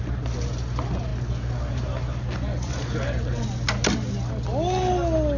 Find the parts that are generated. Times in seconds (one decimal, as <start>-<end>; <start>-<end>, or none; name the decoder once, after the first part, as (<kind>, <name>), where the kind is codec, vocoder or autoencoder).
none